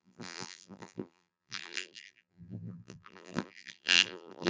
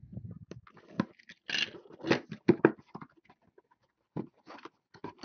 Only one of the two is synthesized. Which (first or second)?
first